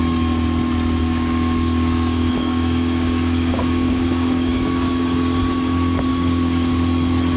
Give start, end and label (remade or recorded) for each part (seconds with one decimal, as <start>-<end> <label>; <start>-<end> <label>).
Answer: 0.0-1.0 recorded; 1.0-5.4 remade; 5.4-6.1 recorded; 6.1-6.7 remade; 6.7-7.4 recorded